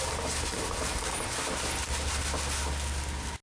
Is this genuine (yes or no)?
yes